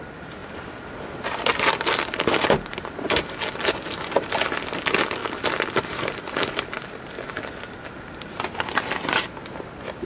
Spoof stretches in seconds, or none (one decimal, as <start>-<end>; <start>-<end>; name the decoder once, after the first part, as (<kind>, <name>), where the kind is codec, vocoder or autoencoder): none